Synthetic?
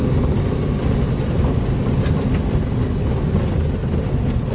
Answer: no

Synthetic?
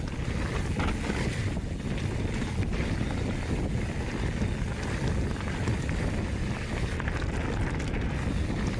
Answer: no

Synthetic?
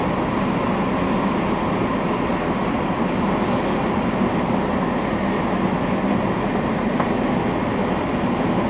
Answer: no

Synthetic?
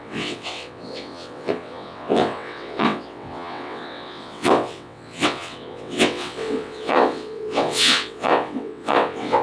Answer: yes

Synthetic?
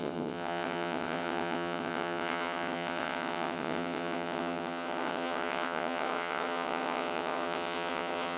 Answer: yes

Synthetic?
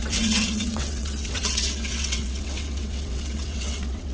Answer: yes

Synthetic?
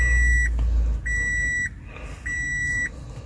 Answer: no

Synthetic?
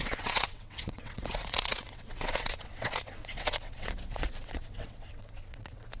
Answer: yes